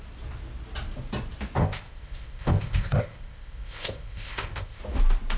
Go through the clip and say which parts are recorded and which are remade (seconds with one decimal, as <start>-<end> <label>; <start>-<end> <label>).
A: 0.0-1.6 recorded; 1.6-4.8 remade; 4.8-5.4 recorded

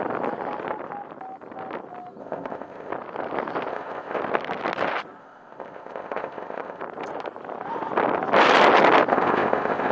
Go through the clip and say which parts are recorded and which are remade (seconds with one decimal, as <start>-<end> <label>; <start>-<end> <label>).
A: 0.0-2.2 recorded; 2.2-2.9 remade; 2.9-3.7 recorded; 3.7-4.2 remade; 4.2-5.2 recorded; 5.2-6.8 remade; 6.8-9.1 recorded; 9.1-9.9 remade

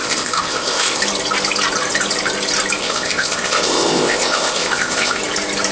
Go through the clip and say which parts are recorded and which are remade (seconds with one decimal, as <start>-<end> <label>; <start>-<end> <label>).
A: 0.0-1.0 remade; 1.0-2.8 recorded; 2.8-5.2 remade; 5.2-5.7 recorded

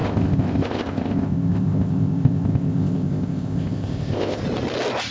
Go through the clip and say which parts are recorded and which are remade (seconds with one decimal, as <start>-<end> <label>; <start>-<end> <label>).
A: 0.0-4.4 remade; 4.4-5.1 recorded

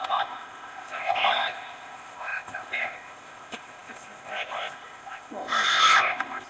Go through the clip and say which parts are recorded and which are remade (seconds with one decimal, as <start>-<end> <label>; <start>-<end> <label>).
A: 0.0-6.5 remade

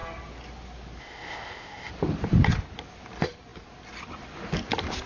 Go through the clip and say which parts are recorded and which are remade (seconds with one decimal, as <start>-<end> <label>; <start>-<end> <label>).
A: 0.0-1.0 recorded; 1.0-1.9 remade; 1.9-5.1 recorded

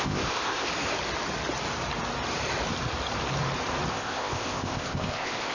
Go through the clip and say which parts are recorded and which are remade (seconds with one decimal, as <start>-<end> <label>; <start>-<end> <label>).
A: 0.0-0.7 remade; 0.7-3.9 recorded; 3.9-5.5 remade